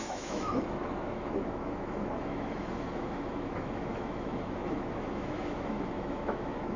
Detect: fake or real fake